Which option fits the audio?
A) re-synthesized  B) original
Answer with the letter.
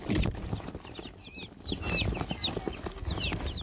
B